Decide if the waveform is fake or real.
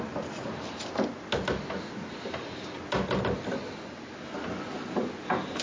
real